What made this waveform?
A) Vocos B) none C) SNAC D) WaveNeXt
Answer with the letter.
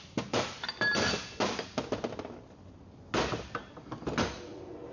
B